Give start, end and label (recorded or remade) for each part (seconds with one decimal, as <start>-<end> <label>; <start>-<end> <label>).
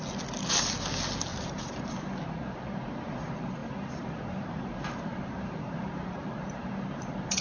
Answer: 0.0-1.3 recorded; 1.3-1.8 remade; 1.8-3.6 recorded; 3.6-6.7 remade; 6.7-7.4 recorded